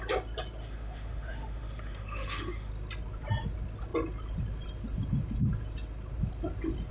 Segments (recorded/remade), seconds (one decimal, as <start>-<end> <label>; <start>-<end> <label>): 0.0-0.6 recorded; 0.6-2.7 remade; 2.7-6.9 recorded